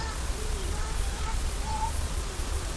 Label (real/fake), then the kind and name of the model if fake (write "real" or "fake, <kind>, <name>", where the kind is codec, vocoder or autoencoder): fake, vocoder, Vocos